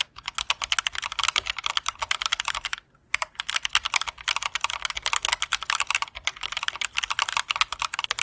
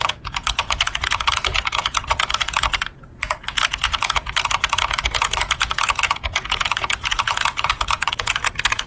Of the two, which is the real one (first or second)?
first